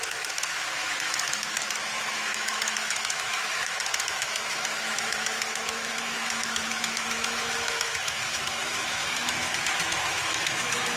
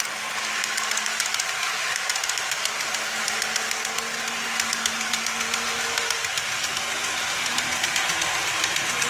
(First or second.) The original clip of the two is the second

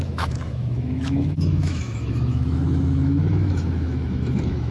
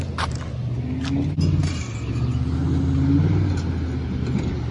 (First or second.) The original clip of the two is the second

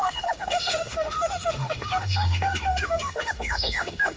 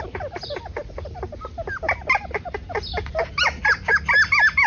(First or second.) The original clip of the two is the second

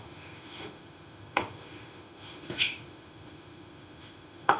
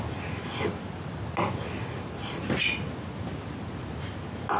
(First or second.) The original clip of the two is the second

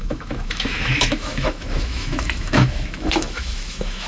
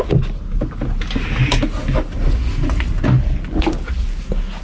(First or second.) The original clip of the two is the second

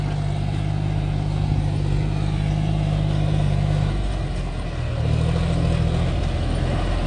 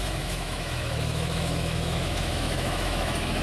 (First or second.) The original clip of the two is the first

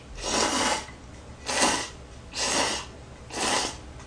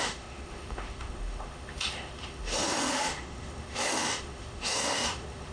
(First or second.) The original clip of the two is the first